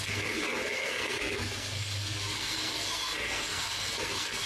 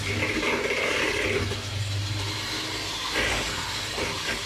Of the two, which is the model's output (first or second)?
first